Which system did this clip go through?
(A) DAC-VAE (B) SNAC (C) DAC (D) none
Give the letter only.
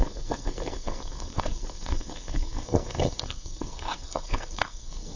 B